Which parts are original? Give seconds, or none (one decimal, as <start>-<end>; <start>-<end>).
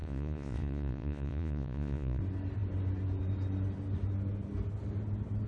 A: 2.2-5.5